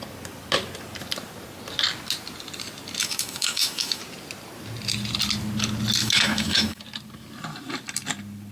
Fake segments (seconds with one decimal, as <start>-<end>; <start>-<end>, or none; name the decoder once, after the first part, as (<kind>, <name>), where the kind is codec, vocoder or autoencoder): 3.0-4.0 (autoencoder, DAC-VAE); 6.0-6.8